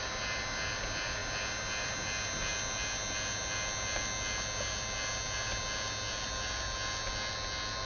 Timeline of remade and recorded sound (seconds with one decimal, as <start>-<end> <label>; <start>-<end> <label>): 0.0-7.9 recorded